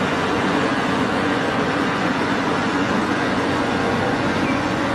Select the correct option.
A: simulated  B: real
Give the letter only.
A